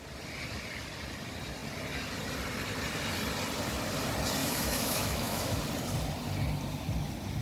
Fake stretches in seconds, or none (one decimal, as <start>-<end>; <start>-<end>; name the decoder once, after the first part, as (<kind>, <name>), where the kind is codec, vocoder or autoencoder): 4.4-5.6 (autoencoder, DAC-VAE)